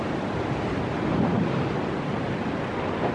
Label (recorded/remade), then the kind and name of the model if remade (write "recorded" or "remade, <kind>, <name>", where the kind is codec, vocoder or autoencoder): recorded